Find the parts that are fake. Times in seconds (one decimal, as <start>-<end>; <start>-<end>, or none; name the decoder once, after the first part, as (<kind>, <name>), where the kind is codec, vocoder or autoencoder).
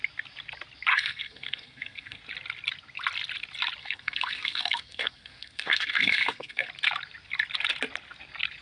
0.9-2.2 (codec, SNAC); 3.8-6.7